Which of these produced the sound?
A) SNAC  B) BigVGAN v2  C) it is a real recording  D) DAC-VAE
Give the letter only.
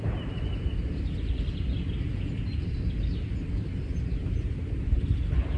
C